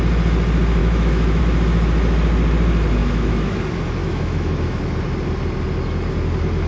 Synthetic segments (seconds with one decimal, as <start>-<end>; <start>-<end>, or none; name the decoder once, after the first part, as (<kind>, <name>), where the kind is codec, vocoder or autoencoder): 0.8-1.4 (autoencoder, DAC-VAE); 3.0-3.6; 4.0-4.8